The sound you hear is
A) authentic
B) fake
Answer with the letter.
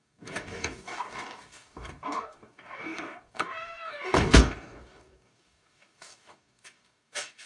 B